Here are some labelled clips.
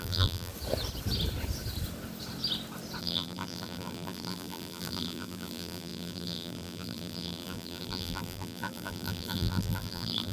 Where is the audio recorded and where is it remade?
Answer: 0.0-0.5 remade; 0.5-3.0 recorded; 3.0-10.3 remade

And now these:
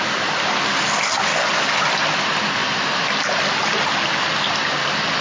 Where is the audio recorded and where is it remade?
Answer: 0.0-2.6 recorded; 2.6-3.2 remade; 3.2-5.2 recorded

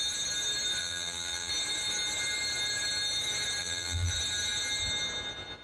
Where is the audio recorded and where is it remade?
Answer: 0.0-0.8 recorded; 0.8-1.5 remade; 1.5-3.6 recorded; 3.6-4.1 remade; 4.1-5.6 recorded

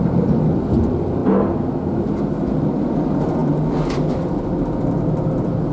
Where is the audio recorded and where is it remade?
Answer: 0.0-1.2 remade; 1.2-2.6 recorded; 2.6-5.7 remade

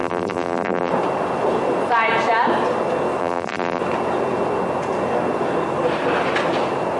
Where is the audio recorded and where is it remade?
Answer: 0.0-0.9 remade; 0.9-3.2 recorded; 3.2-3.8 remade; 3.8-7.0 recorded

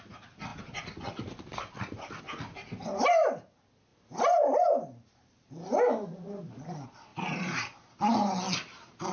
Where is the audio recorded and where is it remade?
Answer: 0.0-3.9 recorded; 3.9-6.4 remade; 6.4-7.1 recorded; 7.1-7.9 remade; 7.9-9.1 recorded

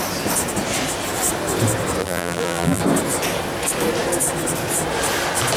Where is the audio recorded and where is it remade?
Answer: 0.0-2.0 recorded; 2.0-2.8 remade; 2.8-5.6 recorded